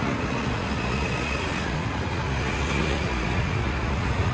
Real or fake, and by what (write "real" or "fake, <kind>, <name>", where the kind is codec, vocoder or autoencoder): fake, vocoder, Vocos